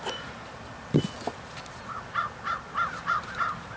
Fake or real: real